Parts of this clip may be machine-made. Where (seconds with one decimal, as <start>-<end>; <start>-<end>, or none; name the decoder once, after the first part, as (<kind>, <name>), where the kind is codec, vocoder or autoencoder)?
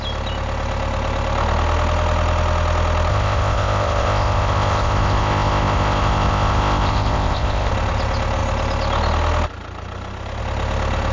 3.1-7.7 (codec, ZipCodec)